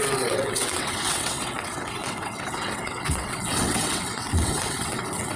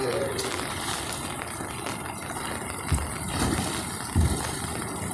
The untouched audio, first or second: second